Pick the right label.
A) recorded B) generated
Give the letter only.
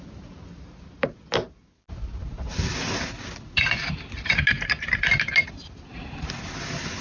A